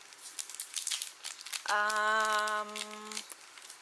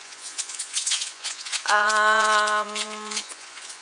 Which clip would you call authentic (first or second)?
first